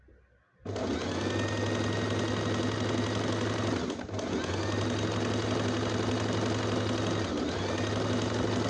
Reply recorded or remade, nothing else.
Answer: recorded